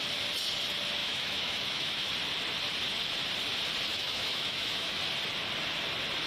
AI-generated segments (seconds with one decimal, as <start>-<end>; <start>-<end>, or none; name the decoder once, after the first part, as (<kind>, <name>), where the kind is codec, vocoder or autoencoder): 1.0-2.1 (autoencoder, DAC-VAE); 3.9-5.0

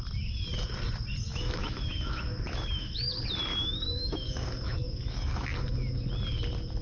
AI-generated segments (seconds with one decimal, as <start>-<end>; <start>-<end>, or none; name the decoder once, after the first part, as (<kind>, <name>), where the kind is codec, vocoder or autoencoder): 1.3-3.1 (autoencoder, DAC-VAE); 3.5-6.0